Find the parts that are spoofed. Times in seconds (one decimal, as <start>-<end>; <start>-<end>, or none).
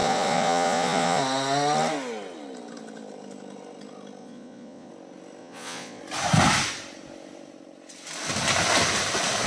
0.0-1.2; 4.2-4.9; 5.4-6.0